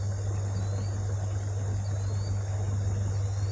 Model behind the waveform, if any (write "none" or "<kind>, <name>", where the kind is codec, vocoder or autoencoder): none